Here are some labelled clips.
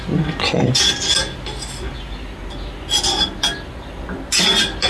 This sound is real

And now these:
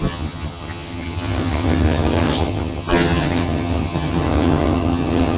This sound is fake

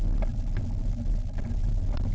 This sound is real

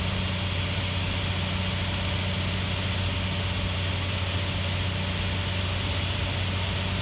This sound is real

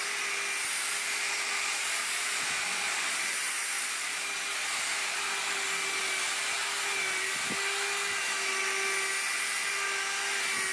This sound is real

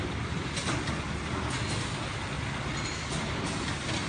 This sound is real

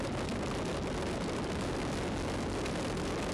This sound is real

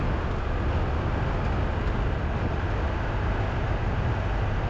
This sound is real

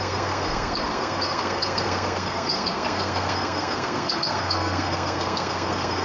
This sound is fake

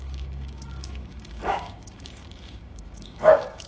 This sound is fake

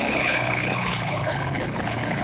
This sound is fake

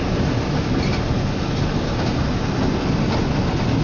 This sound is real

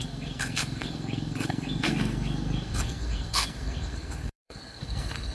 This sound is fake